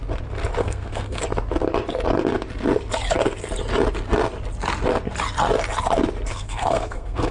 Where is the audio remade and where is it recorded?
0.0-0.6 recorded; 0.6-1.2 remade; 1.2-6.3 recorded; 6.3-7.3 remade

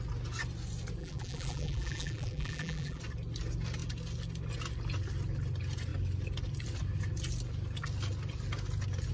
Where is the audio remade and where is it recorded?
0.0-1.0 recorded; 1.0-3.0 remade; 3.0-9.1 recorded